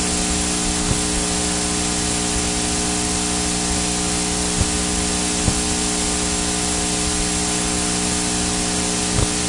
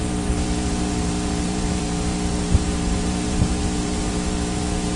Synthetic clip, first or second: second